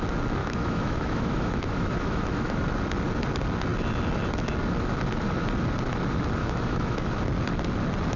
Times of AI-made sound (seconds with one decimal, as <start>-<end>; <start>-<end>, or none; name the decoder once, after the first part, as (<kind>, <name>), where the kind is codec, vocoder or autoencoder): 0.4-2.6 (autoencoder, DAC-VAE); 6.4-7.1